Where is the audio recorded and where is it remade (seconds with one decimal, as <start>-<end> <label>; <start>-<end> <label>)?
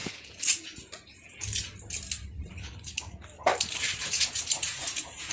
0.0-1.4 remade; 1.4-4.0 recorded; 4.0-5.3 remade